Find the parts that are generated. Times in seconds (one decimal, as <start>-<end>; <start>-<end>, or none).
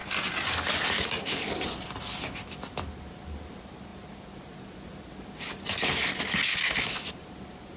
none